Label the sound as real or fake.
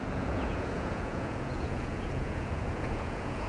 fake